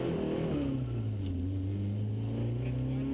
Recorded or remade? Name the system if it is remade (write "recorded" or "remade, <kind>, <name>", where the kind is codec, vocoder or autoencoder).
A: recorded